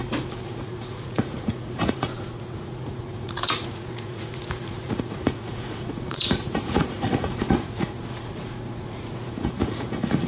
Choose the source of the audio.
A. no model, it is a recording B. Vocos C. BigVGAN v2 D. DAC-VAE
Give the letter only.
B